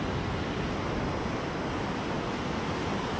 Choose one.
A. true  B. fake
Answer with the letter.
A